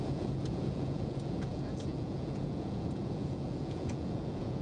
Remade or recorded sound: remade